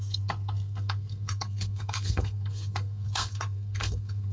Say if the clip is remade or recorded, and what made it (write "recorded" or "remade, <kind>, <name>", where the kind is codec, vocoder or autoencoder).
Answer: remade, codec, SNAC